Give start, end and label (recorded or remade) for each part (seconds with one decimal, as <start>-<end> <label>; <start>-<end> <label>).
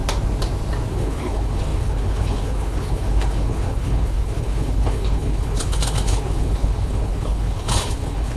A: 0.0-0.9 recorded; 0.9-8.4 remade